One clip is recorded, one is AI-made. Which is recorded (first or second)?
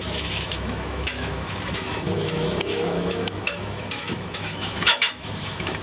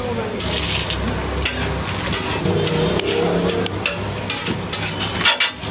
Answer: second